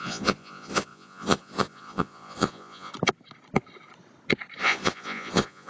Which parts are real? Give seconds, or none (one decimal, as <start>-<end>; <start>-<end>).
2.9-4.6